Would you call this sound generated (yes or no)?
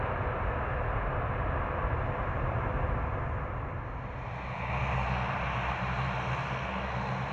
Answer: no